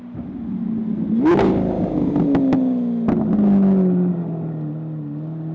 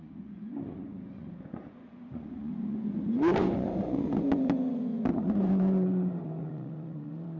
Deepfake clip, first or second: second